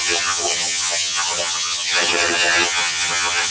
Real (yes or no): no